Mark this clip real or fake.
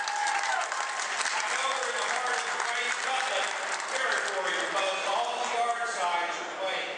real